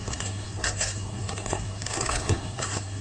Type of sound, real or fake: fake